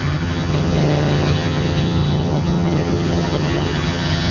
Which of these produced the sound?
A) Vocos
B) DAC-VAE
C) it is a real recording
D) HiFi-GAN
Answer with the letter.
D